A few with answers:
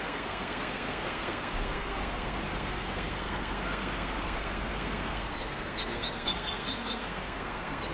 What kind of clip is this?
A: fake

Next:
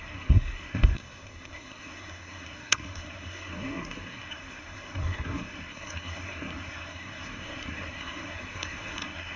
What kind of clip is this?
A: fake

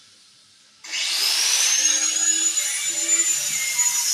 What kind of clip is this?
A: real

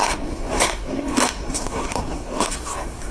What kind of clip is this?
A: fake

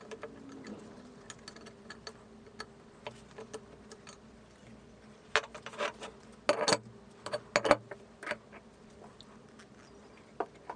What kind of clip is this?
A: real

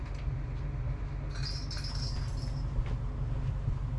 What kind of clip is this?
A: real